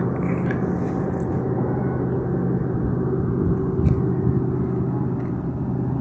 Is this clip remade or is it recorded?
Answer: recorded